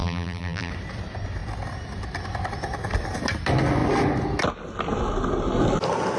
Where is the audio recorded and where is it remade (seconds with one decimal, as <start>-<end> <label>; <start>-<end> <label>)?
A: 0.0-0.7 remade; 0.7-6.2 recorded